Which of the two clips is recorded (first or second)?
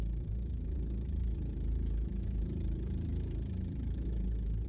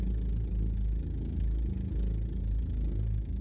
second